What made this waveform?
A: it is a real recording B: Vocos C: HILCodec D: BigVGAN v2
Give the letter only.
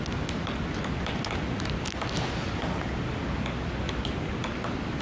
A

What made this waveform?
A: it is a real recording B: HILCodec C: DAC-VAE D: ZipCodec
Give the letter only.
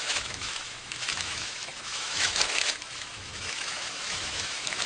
C